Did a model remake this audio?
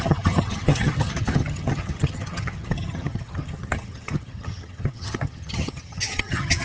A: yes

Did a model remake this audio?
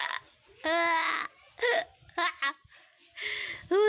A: no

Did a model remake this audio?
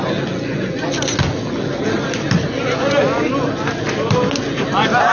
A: no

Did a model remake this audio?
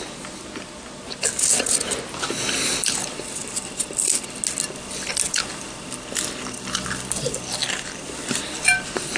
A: no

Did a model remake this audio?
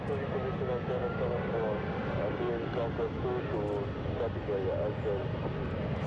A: no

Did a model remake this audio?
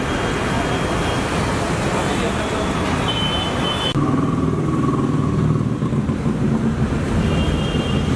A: no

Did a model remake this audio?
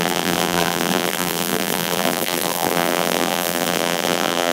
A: yes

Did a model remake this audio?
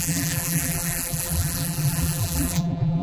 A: yes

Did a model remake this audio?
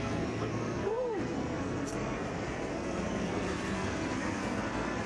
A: yes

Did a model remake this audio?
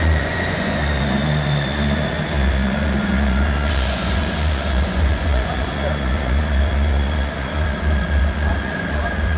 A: yes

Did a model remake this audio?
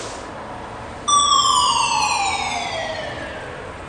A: no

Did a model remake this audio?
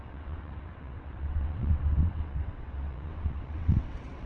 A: yes